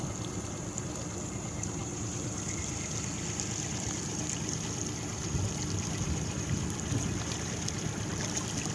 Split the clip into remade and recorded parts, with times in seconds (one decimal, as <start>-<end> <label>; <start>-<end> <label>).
0.0-8.7 recorded